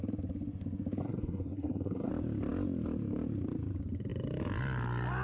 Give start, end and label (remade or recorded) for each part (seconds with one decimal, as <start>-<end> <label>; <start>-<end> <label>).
0.0-1.0 recorded; 1.0-2.1 remade; 2.1-5.2 recorded